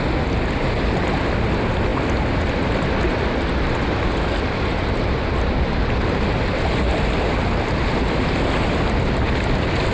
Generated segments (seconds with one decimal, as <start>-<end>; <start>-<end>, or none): none